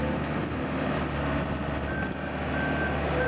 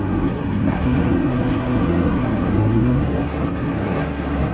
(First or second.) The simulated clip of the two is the second